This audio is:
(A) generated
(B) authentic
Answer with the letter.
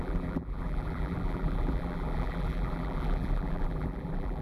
A